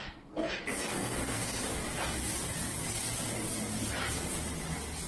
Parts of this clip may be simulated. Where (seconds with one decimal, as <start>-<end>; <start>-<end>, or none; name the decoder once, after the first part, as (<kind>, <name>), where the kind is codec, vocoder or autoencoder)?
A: 0.0-1.6 (codec, SNAC)